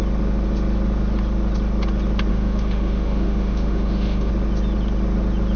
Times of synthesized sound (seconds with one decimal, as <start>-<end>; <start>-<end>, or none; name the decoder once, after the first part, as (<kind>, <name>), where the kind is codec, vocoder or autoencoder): 2.3-4.3 (autoencoder, DAC-VAE)